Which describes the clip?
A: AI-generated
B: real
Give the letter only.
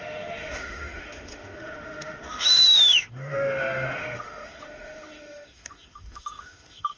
A